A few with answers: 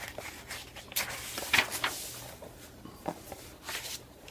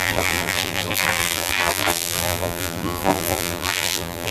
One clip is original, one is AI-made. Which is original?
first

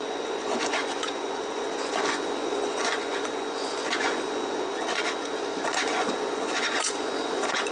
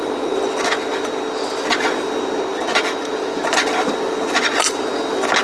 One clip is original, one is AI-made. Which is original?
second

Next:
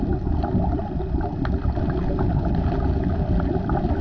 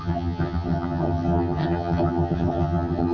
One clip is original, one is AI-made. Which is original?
first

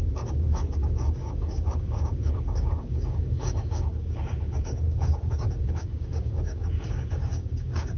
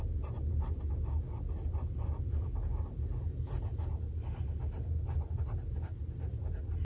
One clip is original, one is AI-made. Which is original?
second